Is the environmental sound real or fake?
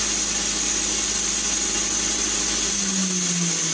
real